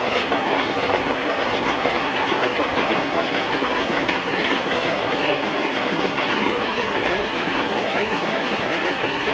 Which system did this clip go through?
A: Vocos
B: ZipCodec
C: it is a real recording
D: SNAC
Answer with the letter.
D